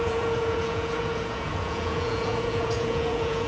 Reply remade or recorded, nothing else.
remade